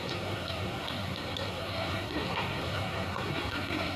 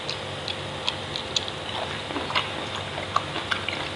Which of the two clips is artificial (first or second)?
first